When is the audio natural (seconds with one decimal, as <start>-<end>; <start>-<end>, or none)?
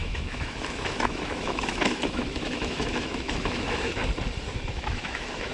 4.0-4.7